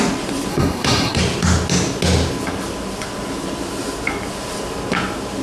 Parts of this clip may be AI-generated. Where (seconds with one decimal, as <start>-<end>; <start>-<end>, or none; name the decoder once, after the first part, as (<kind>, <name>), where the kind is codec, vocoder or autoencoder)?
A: 0.5-1.2 (codec, SNAC)